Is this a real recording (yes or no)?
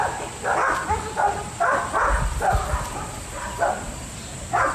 yes